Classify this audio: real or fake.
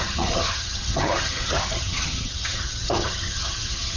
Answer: fake